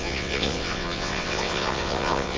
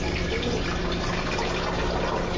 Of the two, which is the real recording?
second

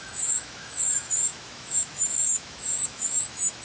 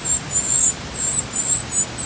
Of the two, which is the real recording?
second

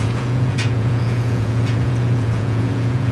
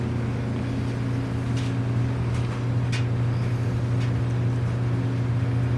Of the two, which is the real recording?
second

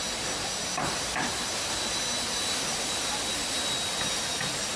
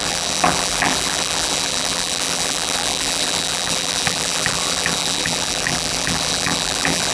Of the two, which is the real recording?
first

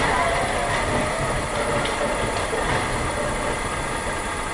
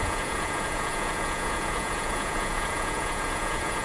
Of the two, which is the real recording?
first